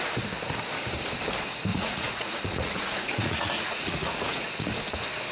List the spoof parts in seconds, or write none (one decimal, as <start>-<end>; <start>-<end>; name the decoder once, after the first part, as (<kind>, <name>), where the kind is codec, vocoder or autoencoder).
1.7-4.7 (vocoder, Vocos)